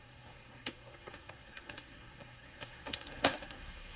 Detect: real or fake fake